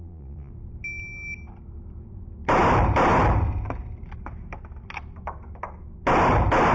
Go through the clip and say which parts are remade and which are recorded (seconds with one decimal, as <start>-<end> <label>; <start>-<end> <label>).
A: 0.0-0.5 remade; 0.5-6.7 recorded